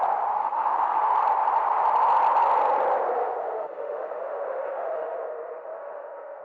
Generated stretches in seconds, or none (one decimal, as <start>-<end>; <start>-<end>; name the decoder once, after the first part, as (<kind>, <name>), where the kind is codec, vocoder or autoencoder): 0.4-1.0 (autoencoder, DAC-VAE); 3.2-6.4